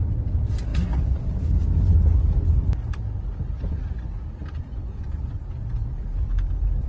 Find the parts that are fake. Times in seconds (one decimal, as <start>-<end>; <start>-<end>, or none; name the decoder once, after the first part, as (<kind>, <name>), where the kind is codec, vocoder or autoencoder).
4.4-6.9 (vocoder, BigVGAN v2)